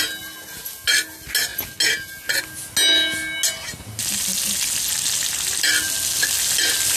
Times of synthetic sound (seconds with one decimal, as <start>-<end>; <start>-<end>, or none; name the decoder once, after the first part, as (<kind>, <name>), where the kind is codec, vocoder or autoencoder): none